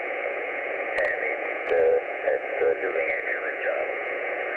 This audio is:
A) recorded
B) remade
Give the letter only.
B